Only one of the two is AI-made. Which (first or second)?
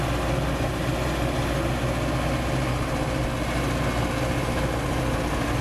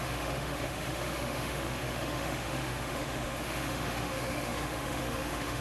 second